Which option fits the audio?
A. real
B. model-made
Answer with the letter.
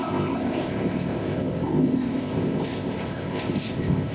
B